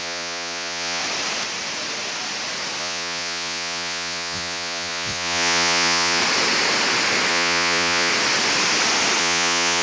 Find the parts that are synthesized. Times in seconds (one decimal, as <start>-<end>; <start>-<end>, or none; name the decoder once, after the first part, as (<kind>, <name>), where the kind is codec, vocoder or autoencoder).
0.0-1.0 (vocoder, Vocos); 2.8-6.2; 7.3-8.1; 9.2-9.8